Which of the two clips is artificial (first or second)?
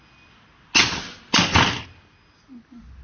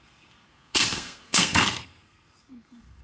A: second